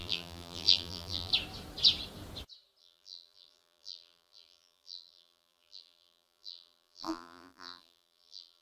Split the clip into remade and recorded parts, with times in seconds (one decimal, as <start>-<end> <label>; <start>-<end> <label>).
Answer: 0.0-1.3 remade; 1.3-2.8 recorded; 2.8-8.6 remade